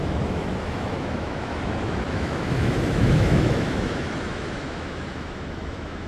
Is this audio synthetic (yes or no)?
yes